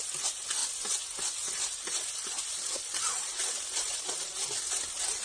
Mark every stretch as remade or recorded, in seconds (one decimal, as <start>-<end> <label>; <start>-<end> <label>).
0.0-5.2 recorded